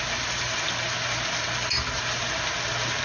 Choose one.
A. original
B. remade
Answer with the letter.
A